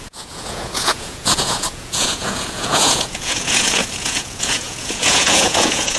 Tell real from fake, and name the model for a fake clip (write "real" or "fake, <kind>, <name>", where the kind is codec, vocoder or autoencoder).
fake, vocoder, Vocos